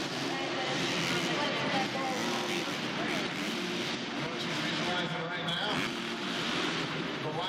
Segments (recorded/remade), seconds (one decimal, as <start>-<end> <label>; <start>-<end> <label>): 0.0-7.5 recorded